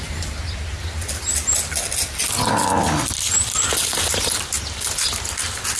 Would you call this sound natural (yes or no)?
yes